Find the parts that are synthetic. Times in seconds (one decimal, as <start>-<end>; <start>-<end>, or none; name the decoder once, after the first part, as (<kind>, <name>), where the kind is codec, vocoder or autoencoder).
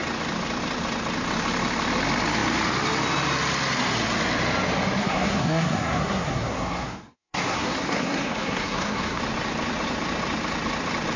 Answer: 5.0-9.2 (codec, SNAC)